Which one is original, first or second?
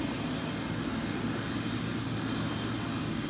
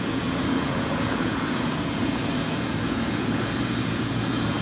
first